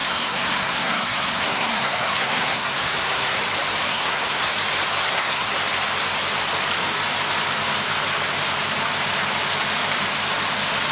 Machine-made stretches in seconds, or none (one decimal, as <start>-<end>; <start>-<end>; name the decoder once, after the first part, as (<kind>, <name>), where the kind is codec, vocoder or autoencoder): 0.0-3.4 (codec, SNAC); 3.9-4.5; 5.0-5.5